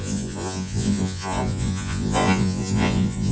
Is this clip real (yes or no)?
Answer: no